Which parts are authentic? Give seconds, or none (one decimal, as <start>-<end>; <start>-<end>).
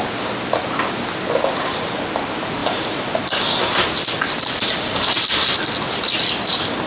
0.0-6.9